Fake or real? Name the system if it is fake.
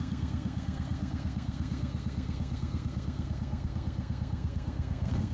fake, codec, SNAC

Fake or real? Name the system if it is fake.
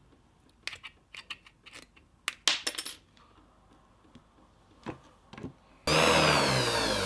real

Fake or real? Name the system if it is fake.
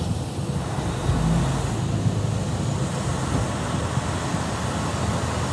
real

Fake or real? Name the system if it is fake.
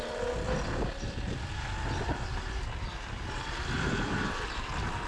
real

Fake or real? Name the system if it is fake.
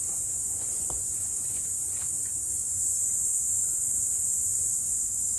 fake, vocoder, Vocos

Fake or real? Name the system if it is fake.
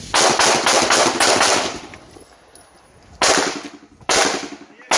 real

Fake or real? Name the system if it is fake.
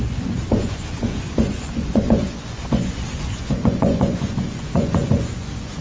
fake, vocoder, Vocos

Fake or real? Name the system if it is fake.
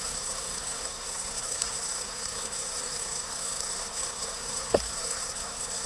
fake, codec, SNAC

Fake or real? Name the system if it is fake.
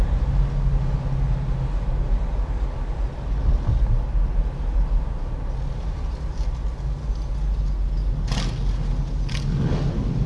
real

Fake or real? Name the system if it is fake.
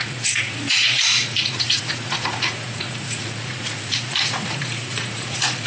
fake, vocoder, Vocos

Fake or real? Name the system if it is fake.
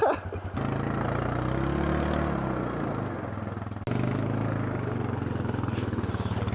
real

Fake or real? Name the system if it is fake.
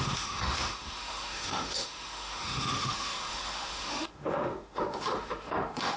fake, autoencoder, DAC-VAE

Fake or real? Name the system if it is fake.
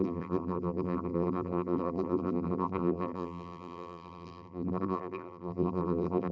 fake, vocoder, BigVGAN v2